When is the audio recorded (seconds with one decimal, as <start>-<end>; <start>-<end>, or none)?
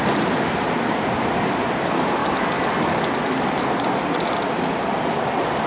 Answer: 0.0-5.7